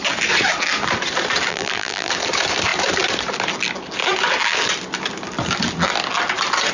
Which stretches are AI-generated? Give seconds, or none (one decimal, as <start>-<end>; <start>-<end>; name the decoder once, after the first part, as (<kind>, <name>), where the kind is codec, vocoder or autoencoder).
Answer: 1.5-2.1 (vocoder, BigVGAN v2)